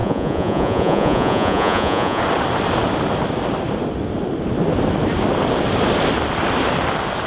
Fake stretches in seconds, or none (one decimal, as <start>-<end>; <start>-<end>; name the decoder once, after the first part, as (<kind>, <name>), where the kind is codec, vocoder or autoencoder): 0.0-2.2 (vocoder, Vocos)

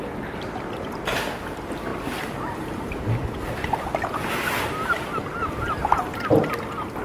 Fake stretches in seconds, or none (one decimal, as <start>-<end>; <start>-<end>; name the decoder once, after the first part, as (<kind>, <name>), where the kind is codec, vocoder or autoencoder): none

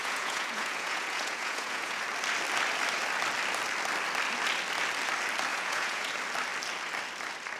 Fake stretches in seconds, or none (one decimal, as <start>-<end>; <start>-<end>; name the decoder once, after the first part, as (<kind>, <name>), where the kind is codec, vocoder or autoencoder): 0.0-2.0 (vocoder, Vocos); 5.5-6.1